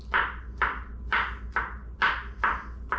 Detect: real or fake real